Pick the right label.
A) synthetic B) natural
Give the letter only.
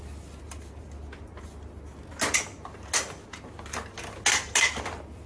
B